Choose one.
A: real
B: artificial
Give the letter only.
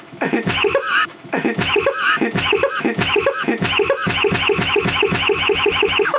B